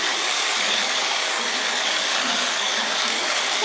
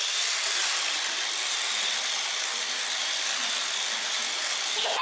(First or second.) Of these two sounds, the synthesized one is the first